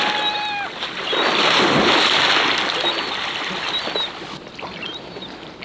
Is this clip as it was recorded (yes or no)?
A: yes